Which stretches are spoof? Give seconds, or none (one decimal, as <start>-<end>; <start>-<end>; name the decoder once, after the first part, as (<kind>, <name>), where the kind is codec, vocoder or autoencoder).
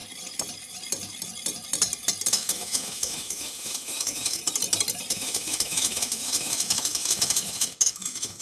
2.3-4.4 (autoencoder, DAC-VAE); 5.1-8.4